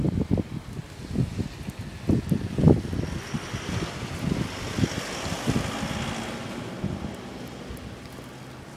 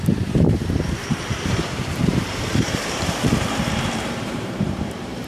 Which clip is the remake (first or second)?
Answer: second